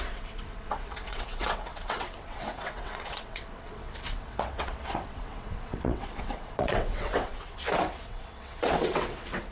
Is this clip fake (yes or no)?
yes